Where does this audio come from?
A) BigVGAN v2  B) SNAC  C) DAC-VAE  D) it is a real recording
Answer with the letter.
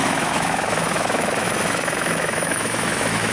C